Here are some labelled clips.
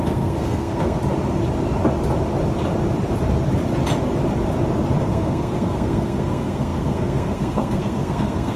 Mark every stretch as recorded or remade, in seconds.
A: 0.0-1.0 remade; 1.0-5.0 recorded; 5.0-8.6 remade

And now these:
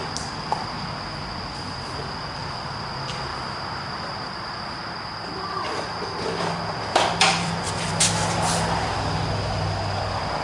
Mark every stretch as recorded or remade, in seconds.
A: 0.0-2.4 recorded; 2.4-2.9 remade; 2.9-3.3 recorded; 3.3-8.0 remade; 8.0-10.4 recorded

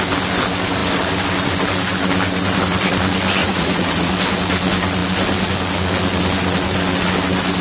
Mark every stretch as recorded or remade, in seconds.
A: 0.0-3.4 recorded; 3.4-4.1 remade; 4.1-7.6 recorded

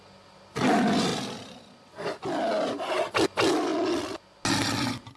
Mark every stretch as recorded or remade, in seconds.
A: 0.0-5.2 recorded

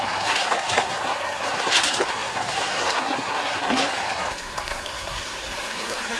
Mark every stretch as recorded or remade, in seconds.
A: 0.0-6.2 remade

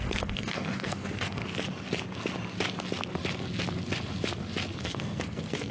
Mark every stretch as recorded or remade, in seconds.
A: 0.0-1.4 remade; 1.4-4.8 recorded; 4.8-5.7 remade

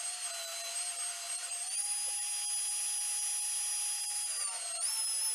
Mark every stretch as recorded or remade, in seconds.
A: 0.0-5.3 recorded